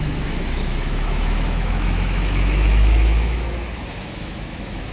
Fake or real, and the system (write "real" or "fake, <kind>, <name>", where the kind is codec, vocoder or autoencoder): fake, autoencoder, DAC-VAE